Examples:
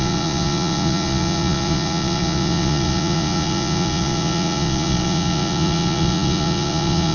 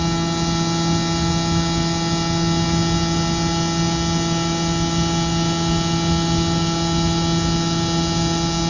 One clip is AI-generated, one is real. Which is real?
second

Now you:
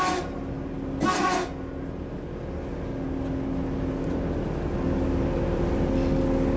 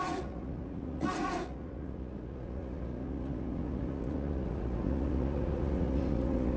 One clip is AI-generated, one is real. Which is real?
first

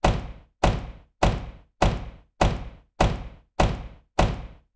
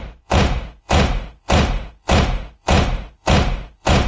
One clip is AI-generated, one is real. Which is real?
first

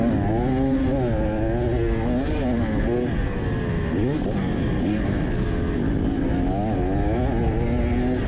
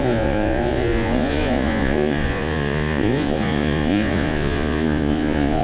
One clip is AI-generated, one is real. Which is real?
first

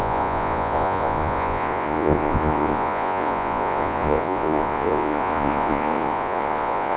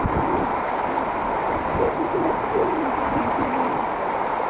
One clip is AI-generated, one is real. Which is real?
second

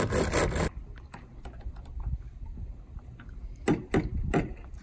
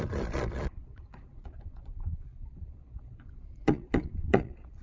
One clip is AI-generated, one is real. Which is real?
first